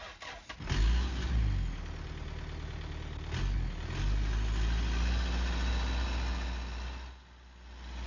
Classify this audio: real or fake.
real